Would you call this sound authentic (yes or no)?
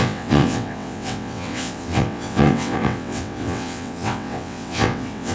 no